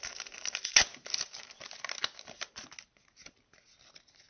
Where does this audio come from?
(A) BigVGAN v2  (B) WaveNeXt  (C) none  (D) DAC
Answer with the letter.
C